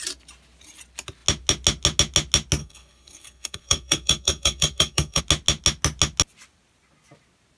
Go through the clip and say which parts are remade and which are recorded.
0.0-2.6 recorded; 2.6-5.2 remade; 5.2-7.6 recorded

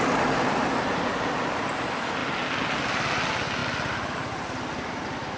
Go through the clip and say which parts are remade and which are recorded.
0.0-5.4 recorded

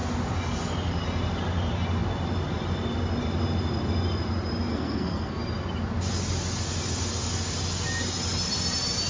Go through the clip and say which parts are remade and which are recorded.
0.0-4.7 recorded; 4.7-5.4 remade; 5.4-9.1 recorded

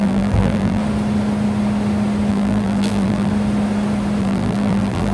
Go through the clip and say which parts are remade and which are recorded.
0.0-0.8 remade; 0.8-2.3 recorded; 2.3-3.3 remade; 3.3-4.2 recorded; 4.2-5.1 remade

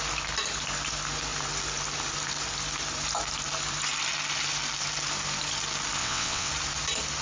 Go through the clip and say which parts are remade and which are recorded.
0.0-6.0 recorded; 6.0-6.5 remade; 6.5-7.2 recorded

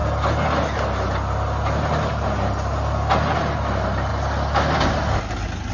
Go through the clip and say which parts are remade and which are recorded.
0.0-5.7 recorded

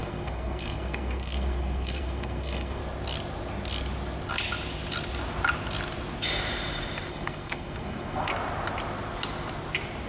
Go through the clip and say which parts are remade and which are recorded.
0.0-2.8 remade; 2.8-7.1 recorded; 7.1-8.3 remade; 8.3-10.1 recorded